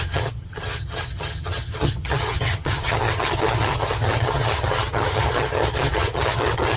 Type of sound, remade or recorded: remade